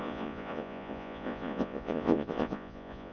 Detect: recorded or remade remade